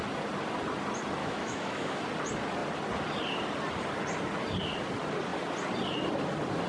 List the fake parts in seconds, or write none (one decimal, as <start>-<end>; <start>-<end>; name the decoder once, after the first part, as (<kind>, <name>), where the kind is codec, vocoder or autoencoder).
1.2-2.0 (autoencoder, DAC-VAE)